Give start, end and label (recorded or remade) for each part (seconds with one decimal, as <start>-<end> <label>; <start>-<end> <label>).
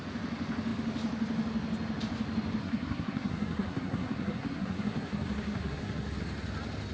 0.0-2.6 recorded; 2.6-6.2 remade; 6.2-6.9 recorded